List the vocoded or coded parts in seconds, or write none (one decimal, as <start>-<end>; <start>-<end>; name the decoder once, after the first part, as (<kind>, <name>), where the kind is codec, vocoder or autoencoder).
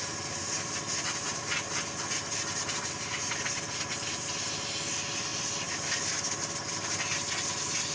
none